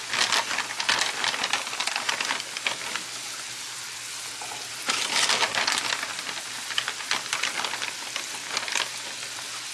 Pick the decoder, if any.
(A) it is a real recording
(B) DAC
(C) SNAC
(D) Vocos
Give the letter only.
A